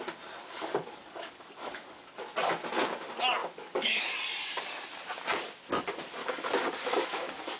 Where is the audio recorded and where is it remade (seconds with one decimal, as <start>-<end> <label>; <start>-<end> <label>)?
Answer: 0.0-0.4 recorded; 0.4-2.2 remade; 2.2-3.4 recorded; 3.4-4.1 remade; 4.1-6.2 recorded; 6.2-7.6 remade